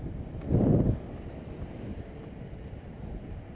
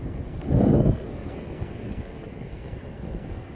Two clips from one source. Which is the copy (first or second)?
second